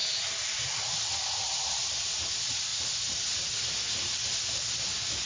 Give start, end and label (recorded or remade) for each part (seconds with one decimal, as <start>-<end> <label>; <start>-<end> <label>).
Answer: 0.0-5.3 recorded